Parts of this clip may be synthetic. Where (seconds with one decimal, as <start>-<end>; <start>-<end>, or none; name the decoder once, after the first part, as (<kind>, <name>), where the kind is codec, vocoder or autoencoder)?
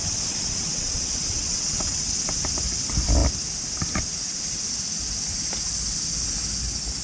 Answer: 0.0-2.1 (vocoder, WaveNeXt)